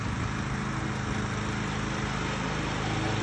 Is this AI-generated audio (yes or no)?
no